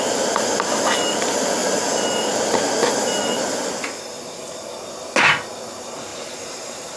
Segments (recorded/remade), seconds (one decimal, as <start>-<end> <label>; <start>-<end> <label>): 0.0-6.1 recorded; 6.1-7.0 remade